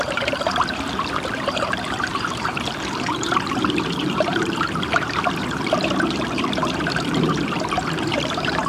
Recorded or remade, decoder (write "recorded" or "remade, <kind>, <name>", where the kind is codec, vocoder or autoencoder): remade, vocoder, BigVGAN v2